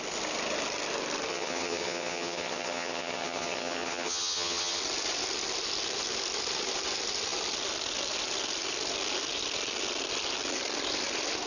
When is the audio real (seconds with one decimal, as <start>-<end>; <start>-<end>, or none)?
0.0-1.3; 4.8-11.5